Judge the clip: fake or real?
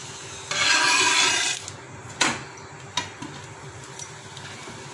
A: real